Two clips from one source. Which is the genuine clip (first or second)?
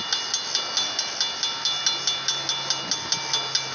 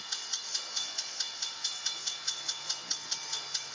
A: first